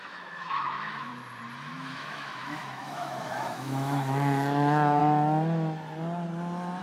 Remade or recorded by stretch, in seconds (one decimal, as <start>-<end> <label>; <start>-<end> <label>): 0.0-1.1 remade; 1.1-1.7 recorded; 1.7-5.0 remade; 5.0-6.8 recorded